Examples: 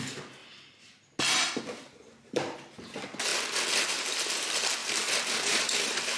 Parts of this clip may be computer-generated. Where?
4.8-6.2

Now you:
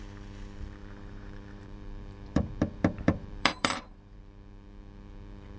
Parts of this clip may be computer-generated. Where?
0.8-4.2

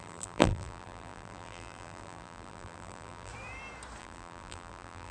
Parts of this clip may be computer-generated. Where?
0.0-3.3; 4.0-5.1

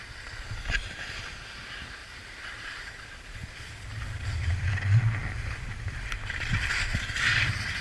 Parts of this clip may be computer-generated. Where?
0.0-2.0; 2.6-3.4; 4.5-7.8

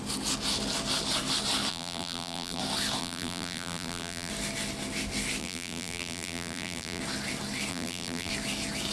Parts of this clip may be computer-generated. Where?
1.7-2.6; 3.0-4.3; 5.4-7.0; 7.7-8.3

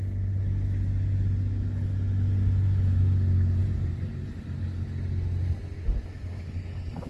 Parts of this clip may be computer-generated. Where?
3.6-4.4